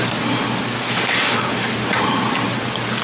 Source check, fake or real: real